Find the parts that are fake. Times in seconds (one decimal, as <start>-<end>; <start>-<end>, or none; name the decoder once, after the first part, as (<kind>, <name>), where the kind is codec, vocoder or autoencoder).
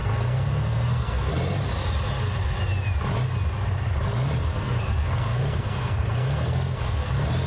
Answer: 0.0-1.3 (codec, SNAC); 4.5-7.1